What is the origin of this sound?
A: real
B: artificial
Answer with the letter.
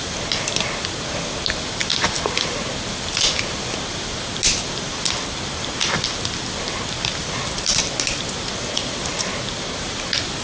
A